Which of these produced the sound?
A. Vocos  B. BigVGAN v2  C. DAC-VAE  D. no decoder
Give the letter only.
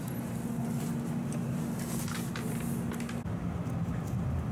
D